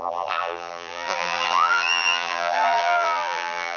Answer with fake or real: fake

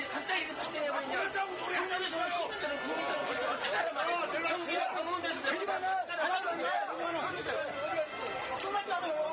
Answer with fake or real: real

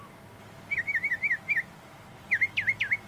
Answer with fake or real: real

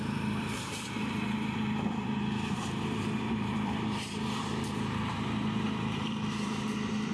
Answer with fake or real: fake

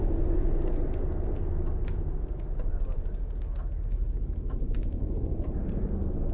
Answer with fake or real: real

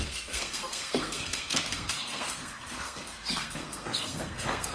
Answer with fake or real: fake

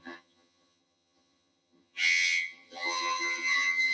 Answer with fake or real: fake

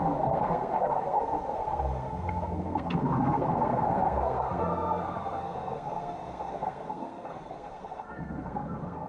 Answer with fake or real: fake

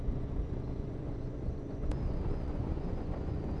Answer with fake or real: fake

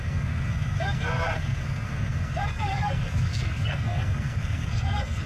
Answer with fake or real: fake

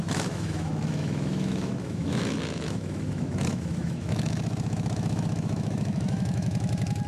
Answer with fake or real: fake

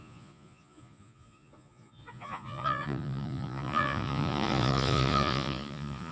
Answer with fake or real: fake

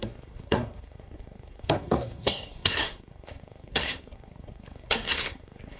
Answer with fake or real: fake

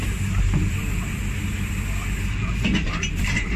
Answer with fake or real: real